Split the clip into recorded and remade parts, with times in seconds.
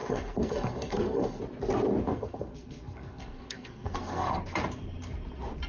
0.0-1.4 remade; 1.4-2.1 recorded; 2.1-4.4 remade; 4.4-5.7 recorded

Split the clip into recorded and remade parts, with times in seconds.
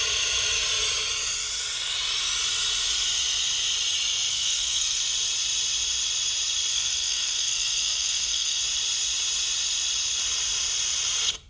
0.0-4.3 recorded; 4.3-5.0 remade; 5.0-6.7 recorded; 6.7-8.6 remade; 8.6-11.5 recorded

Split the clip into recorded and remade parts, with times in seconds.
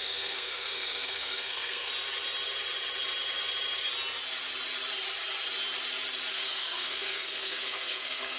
0.0-1.9 remade; 1.9-6.3 recorded; 6.3-8.4 remade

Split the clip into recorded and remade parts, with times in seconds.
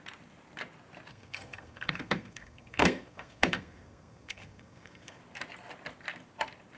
0.0-1.1 recorded; 1.1-5.2 remade; 5.2-6.8 recorded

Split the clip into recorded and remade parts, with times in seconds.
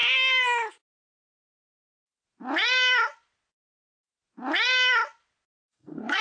0.0-1.3 recorded; 1.3-2.0 remade; 2.0-5.7 recorded; 5.7-6.2 remade